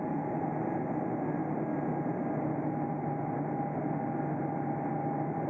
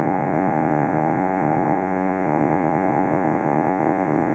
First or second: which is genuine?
first